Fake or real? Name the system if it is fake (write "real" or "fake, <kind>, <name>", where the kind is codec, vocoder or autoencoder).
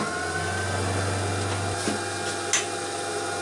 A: real